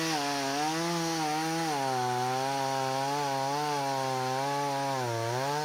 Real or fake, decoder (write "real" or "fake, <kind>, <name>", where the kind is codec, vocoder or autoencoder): real